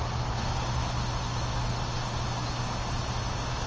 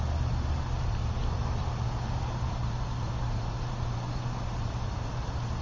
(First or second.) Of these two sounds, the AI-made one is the second